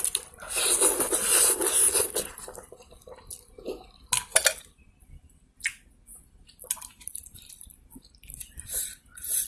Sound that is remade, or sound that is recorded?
recorded